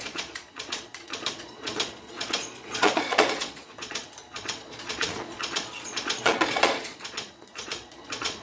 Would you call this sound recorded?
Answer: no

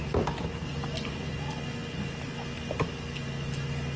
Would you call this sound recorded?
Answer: yes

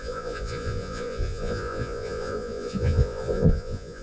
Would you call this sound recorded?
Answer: no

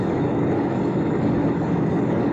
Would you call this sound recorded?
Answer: no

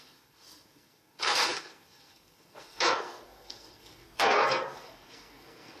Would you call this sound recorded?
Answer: no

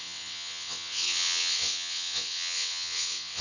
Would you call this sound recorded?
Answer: no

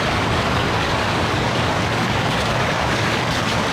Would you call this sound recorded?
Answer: no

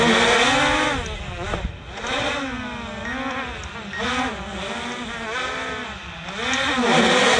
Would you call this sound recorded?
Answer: yes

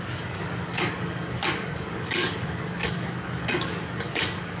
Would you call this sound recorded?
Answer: no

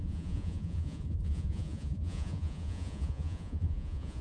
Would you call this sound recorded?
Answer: no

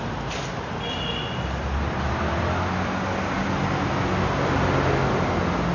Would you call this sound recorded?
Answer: yes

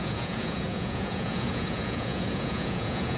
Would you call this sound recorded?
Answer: no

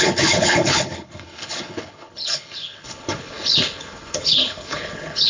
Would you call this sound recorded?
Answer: no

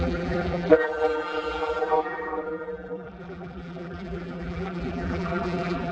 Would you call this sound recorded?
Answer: no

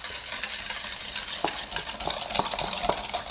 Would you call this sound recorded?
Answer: yes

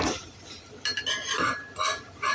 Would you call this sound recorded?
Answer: yes